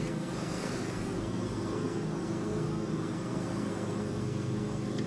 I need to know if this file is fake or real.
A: fake